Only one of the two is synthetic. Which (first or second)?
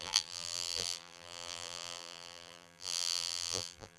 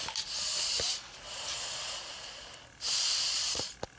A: first